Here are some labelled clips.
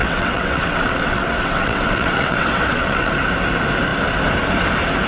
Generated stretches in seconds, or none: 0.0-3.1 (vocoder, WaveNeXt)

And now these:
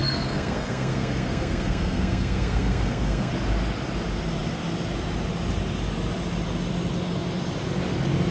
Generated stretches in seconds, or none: 0.0-3.3 (codec, SNAC)